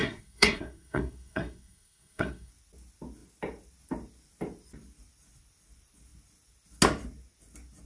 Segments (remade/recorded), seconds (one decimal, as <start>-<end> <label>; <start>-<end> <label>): 0.0-2.5 remade; 2.5-7.9 recorded